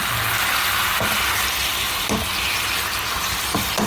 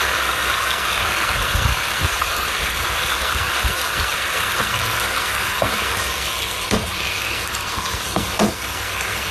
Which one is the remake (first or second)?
second